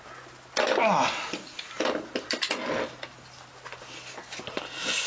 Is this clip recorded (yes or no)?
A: yes